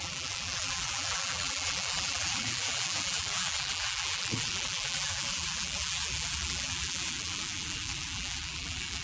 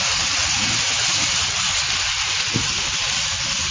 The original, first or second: second